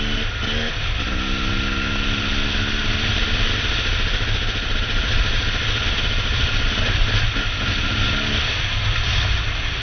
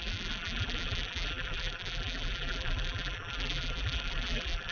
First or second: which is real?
first